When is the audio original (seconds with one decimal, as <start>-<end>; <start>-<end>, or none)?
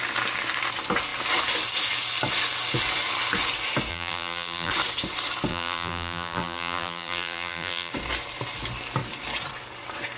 0.0-3.9; 4.7-5.5; 7.9-10.2